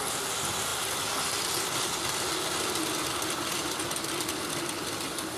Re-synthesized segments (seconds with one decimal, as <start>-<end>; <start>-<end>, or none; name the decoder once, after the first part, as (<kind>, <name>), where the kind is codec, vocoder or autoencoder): none